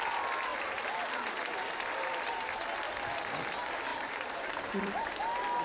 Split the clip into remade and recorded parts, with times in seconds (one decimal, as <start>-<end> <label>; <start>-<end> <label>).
0.0-3.9 recorded; 3.9-4.9 remade; 4.9-5.6 recorded